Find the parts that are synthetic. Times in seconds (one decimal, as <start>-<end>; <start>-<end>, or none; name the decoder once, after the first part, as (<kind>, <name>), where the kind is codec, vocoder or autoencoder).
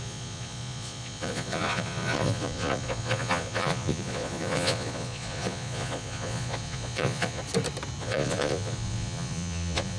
0.0-7.4 (vocoder, Vocos); 8.0-10.0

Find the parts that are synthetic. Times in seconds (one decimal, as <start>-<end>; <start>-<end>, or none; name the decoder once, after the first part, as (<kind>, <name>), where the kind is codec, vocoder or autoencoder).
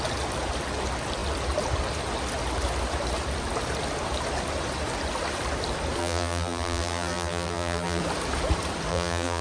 6.0-8.0 (vocoder, BigVGAN v2); 8.9-9.4